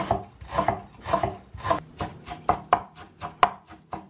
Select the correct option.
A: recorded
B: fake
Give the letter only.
A